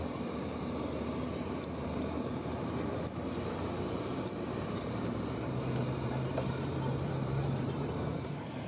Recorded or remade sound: remade